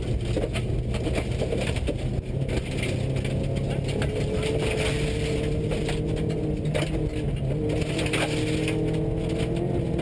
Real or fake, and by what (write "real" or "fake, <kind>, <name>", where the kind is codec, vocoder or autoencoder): real